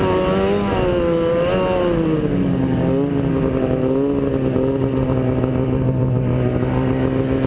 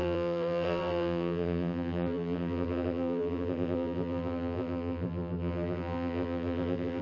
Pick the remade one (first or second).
second